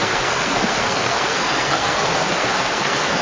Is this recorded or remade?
remade